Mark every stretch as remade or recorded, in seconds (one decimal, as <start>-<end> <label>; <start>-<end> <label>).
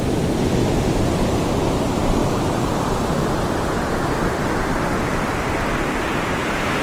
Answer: 0.0-6.8 recorded